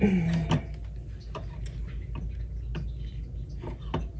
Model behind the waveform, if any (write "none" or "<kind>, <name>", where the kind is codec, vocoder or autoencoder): none